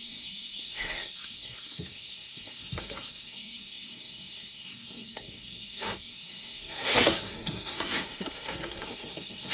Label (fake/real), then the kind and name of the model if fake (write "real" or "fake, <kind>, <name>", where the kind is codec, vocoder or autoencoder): fake, codec, SNAC